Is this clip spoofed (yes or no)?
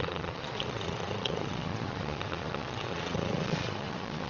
yes